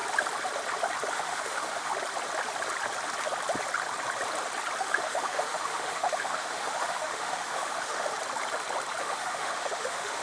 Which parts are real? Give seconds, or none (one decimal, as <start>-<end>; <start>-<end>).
0.0-1.1; 1.9-4.8; 8.1-9.0